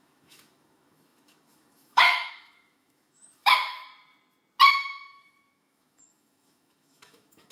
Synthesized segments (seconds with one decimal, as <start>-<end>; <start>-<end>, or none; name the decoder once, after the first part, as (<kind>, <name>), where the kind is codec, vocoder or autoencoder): 0.0-3.9 (autoencoder, DAC-VAE); 4.7-7.5